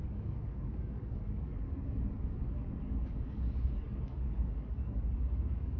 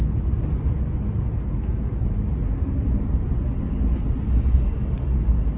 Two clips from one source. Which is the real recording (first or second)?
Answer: second